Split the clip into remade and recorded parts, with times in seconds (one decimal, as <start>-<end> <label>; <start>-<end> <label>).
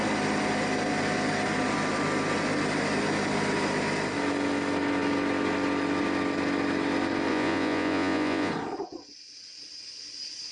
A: 0.0-7.3 recorded; 7.3-8.5 remade; 8.5-10.5 recorded